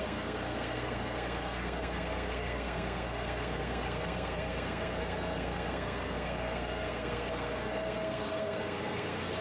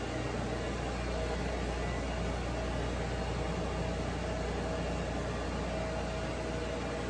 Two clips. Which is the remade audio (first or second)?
first